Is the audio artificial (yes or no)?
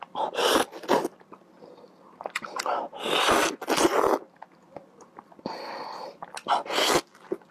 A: no